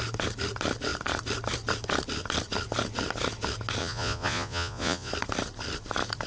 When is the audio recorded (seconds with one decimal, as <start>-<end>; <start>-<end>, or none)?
0.0-3.8; 5.1-6.3